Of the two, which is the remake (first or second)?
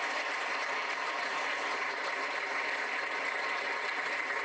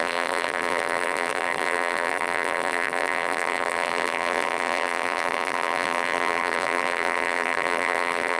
second